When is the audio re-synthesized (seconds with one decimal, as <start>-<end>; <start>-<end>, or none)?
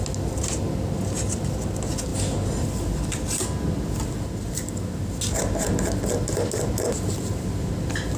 none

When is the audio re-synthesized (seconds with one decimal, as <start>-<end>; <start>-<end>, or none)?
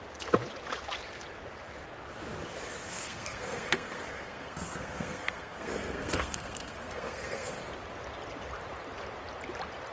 2.8-7.6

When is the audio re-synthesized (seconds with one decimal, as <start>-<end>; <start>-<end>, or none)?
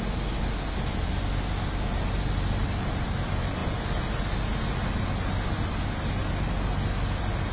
none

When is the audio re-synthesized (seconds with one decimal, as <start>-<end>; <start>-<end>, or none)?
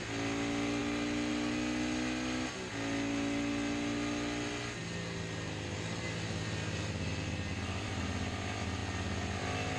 none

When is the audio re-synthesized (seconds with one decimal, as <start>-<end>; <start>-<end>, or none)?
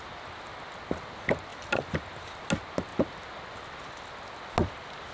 none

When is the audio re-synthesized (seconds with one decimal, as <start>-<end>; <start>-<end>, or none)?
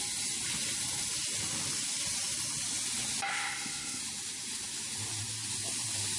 3.3-4.0